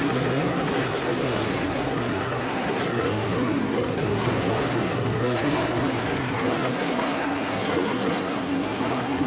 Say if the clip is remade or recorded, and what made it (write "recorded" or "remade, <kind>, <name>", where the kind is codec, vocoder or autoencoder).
remade, codec, SNAC